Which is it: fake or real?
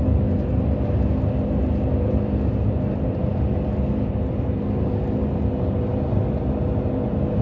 real